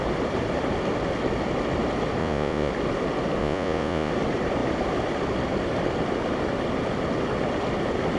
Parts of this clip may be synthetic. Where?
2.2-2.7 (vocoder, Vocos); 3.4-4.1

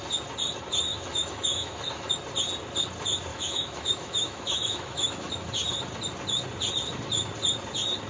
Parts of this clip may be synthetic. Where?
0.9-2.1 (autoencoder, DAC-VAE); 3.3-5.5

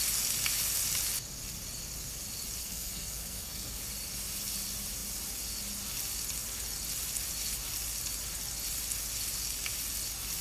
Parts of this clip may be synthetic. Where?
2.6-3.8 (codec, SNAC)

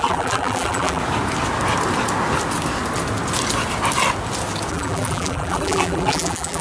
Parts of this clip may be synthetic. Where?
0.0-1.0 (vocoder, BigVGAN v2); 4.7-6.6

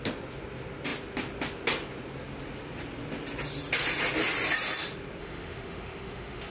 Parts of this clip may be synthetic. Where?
5.2-6.5 (autoencoder, DAC-VAE)

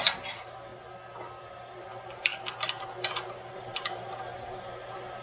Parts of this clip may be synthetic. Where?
0.0-0.7 (vocoder, BigVGAN v2); 1.4-2.3; 3.5-5.2